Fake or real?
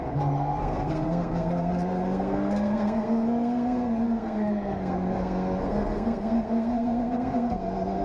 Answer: fake